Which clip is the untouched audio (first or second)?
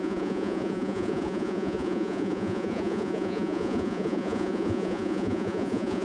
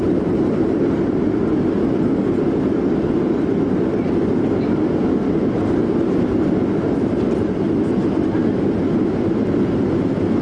second